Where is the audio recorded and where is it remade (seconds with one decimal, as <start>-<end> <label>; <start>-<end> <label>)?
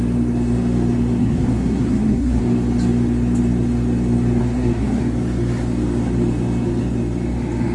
0.0-1.2 recorded; 1.2-2.4 remade; 2.4-4.4 recorded; 4.4-5.0 remade; 5.0-7.7 recorded